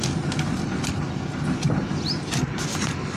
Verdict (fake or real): real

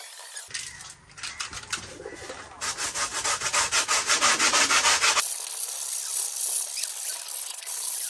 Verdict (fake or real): real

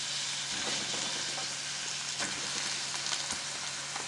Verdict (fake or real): real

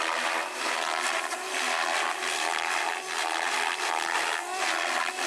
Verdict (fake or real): real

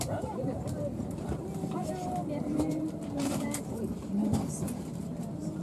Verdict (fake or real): fake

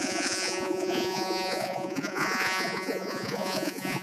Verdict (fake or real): fake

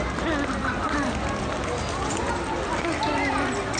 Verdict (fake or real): real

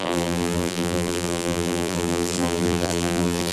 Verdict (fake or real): fake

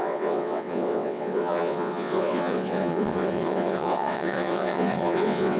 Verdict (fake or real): fake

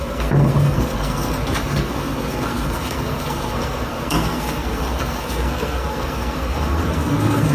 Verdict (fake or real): fake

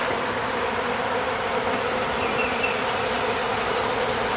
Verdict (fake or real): real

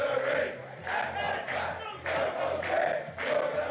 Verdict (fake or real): real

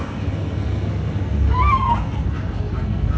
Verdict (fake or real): fake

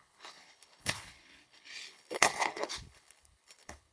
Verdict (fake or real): fake